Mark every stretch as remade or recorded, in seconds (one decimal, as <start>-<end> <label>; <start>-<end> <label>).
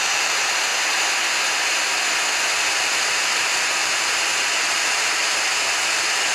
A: 0.0-0.7 remade; 0.7-2.7 recorded; 2.7-5.2 remade; 5.2-6.3 recorded